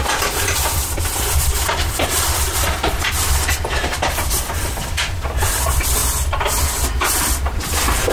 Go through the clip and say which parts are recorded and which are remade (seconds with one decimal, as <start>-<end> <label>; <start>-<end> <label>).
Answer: 0.0-8.1 recorded